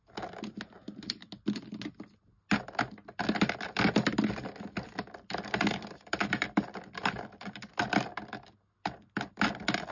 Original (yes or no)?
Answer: yes